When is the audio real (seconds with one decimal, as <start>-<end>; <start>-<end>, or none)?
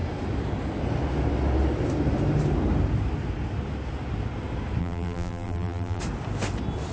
0.0-4.8; 6.0-6.9